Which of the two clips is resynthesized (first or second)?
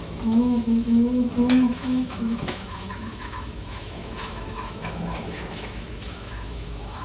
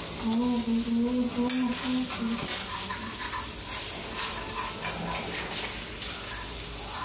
first